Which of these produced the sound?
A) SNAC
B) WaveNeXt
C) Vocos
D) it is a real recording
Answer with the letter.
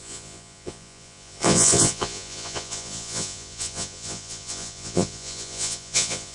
C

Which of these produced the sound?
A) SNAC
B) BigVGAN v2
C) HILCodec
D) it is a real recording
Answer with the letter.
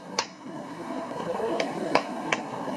A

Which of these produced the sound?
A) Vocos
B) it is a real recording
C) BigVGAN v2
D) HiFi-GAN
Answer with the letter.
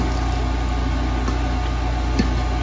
B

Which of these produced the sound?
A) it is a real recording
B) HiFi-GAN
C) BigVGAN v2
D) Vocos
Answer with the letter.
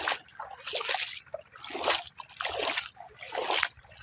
A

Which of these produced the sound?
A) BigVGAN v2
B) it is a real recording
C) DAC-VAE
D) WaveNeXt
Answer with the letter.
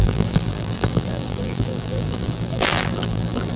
A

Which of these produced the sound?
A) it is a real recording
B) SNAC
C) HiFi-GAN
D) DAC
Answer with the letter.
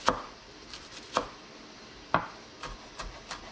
A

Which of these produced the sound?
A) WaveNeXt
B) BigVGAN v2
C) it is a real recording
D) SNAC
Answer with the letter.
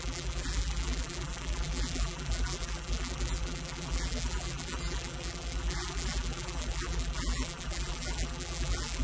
B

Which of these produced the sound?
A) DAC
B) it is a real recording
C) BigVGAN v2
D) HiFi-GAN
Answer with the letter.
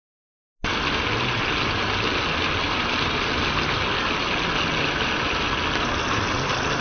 B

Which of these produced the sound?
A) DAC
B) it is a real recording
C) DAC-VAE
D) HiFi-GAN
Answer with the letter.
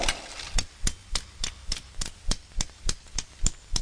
B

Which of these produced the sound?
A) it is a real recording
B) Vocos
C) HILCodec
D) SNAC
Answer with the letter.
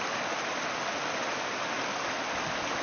A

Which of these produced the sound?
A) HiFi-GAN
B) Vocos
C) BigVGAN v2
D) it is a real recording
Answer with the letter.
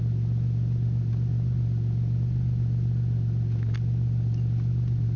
D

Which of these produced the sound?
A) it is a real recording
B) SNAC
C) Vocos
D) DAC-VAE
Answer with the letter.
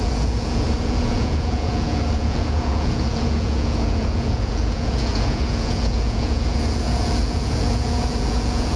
C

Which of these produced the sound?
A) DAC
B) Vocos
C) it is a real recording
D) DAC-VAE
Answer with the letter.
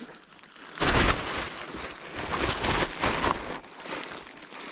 C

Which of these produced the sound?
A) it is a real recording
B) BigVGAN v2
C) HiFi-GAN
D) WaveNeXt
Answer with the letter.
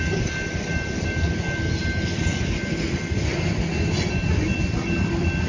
A